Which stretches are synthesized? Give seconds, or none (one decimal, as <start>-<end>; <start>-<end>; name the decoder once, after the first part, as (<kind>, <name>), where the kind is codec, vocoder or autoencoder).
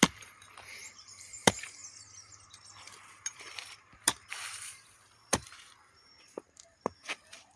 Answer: 0.0-1.8 (vocoder, BigVGAN v2); 3.0-7.6